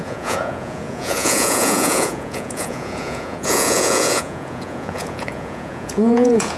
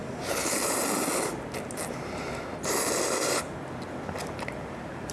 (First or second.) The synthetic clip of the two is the first